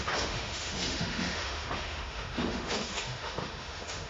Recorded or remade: remade